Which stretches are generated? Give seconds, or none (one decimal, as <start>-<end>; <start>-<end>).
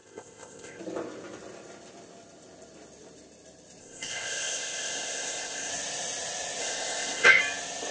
0.0-0.8; 3.8-5.7; 6.6-7.4